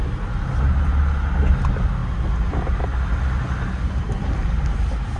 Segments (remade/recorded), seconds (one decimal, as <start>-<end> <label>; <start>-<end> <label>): 0.0-5.2 recorded